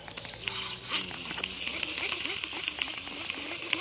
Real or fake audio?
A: real